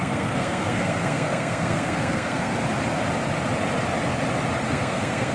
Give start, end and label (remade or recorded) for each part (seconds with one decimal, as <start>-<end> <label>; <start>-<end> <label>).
0.0-2.5 remade; 2.5-4.7 recorded; 4.7-5.3 remade